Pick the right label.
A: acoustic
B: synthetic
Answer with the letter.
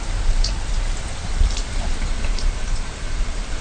B